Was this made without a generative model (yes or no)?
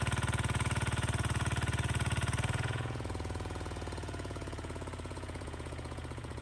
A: no